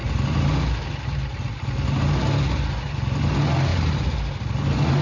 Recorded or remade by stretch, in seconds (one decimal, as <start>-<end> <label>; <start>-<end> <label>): 0.0-3.7 recorded; 3.7-4.4 remade; 4.4-5.0 recorded